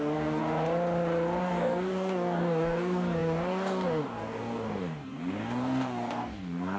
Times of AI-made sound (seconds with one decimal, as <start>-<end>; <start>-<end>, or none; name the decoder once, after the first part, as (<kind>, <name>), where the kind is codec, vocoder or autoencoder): 0.0-0.4 (codec, DAC); 1.4-6.8